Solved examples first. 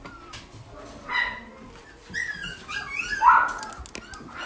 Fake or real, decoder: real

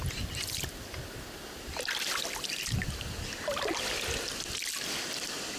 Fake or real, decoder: real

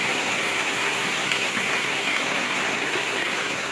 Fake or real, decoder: fake, codec, SNAC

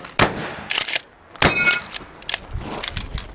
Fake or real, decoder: real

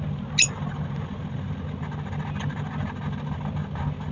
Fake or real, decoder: real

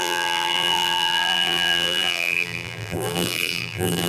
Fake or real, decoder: fake, vocoder, BigVGAN v2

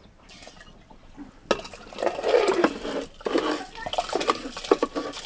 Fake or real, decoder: real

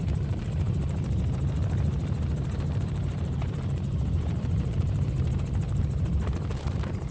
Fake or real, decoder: fake, vocoder, BigVGAN v2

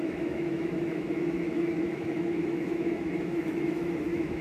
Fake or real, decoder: fake, autoencoder, DAC-VAE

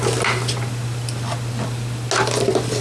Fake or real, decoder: real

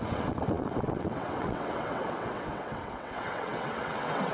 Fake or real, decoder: fake, vocoder, WaveNeXt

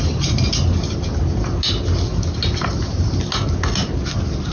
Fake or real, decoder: real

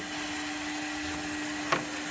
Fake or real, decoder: real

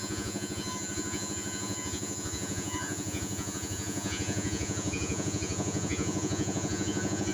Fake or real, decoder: fake, vocoder, Vocos